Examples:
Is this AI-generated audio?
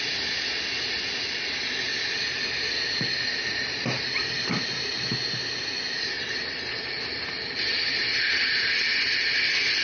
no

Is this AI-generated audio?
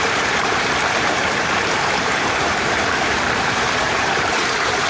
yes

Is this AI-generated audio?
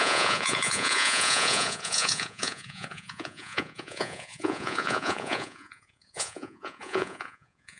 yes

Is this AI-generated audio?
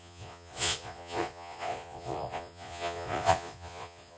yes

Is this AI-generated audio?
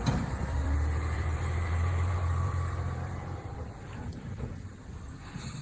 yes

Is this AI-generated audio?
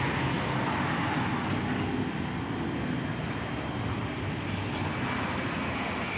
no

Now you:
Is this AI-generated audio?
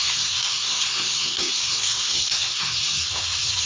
yes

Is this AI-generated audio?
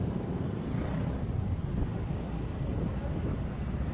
no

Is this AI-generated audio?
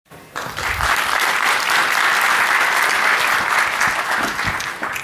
no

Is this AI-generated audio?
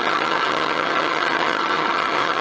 yes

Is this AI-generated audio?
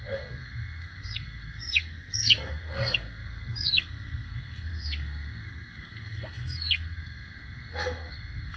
yes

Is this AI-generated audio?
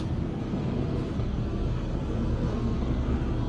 yes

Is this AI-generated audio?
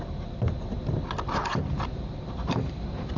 no